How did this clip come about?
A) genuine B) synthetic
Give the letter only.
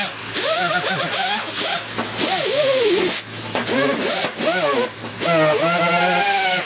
A